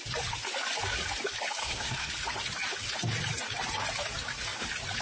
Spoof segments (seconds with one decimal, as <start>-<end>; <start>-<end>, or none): 1.6-2.1